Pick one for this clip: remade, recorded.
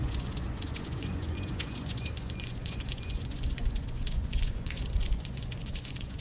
remade